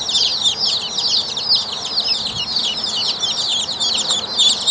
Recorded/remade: recorded